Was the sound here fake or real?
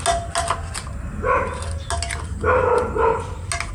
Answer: real